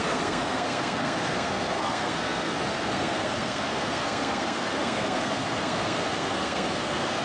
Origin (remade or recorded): remade